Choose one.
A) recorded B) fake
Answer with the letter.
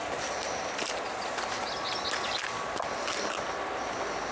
A